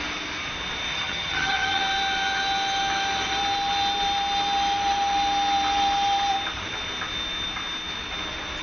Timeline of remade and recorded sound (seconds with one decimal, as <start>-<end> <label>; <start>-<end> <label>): 0.0-0.9 recorded; 0.9-1.8 remade; 1.8-8.6 recorded